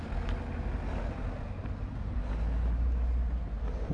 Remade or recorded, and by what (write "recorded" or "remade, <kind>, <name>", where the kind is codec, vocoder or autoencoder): recorded